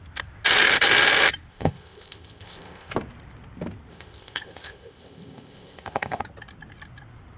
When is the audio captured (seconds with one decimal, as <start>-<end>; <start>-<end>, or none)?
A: 0.0-1.5; 2.9-3.9; 6.2-7.4